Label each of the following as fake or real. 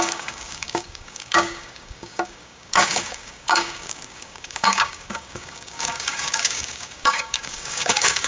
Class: fake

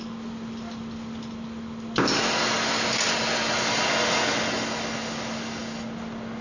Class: real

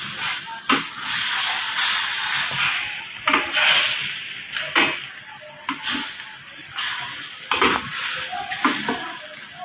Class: real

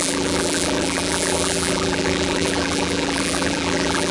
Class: fake